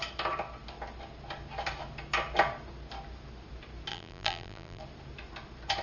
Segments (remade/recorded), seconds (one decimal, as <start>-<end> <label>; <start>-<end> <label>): 0.0-3.9 recorded; 3.9-4.8 remade; 4.8-5.8 recorded